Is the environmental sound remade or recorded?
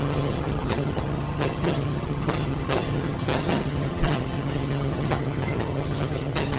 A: remade